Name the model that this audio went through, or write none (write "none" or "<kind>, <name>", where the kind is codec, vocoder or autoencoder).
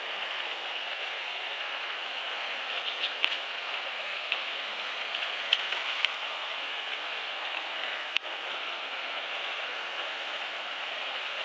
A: codec, SNAC